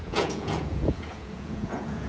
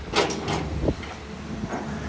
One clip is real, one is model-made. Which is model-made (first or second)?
first